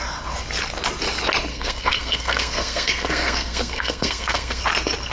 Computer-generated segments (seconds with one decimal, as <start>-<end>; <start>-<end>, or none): 1.5-4.6